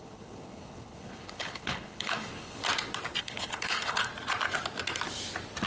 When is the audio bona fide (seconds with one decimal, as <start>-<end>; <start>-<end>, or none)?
2.6-3.2; 4.1-5.7